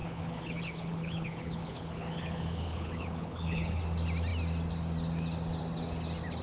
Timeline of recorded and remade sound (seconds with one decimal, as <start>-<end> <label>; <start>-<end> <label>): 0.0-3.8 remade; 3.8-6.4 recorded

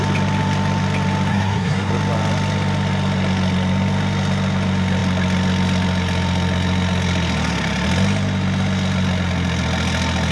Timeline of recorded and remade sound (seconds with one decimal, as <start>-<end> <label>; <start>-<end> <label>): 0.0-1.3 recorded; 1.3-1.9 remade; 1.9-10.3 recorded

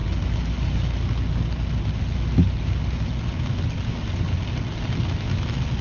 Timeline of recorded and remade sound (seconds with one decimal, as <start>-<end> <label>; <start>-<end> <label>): 0.0-5.8 recorded